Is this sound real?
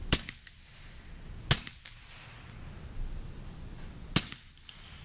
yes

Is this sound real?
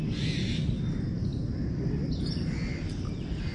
yes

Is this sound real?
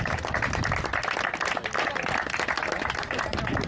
yes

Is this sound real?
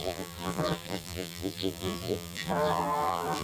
no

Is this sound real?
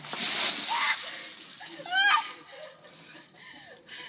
yes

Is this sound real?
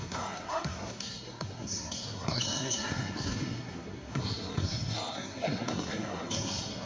no